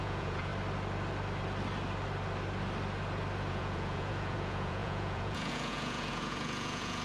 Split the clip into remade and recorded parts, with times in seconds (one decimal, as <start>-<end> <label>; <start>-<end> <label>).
0.0-0.5 remade; 0.5-3.5 recorded; 3.5-7.0 remade